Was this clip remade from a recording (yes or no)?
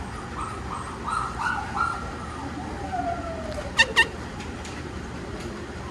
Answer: yes